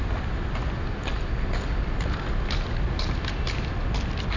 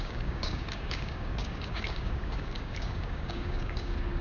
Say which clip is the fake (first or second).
second